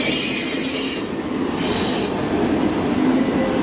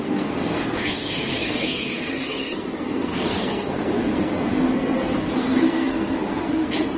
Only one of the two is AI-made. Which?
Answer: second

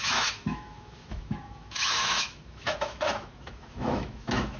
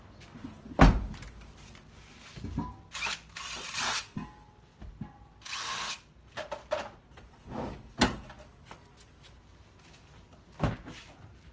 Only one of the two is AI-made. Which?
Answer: first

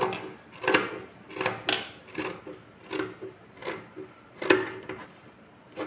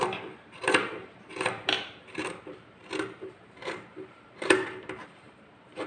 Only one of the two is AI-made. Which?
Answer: second